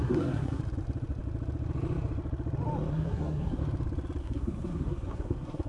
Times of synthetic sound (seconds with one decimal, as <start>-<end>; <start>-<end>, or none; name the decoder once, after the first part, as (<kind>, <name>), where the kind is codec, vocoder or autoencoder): 0.0-0.6 (codec, SNAC); 2.9-3.6; 4.2-5.7